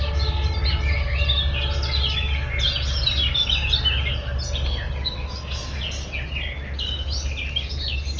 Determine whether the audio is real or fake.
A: real